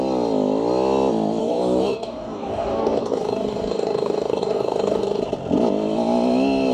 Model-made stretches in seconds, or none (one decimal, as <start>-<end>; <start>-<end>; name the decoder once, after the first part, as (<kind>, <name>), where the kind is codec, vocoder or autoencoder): 1.4-5.2 (codec, DAC)